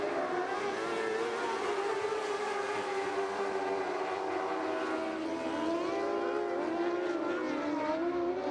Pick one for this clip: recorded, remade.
recorded